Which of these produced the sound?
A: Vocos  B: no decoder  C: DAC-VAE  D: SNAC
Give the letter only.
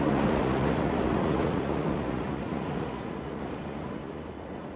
A